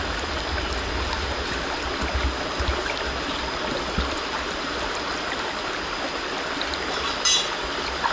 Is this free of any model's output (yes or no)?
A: yes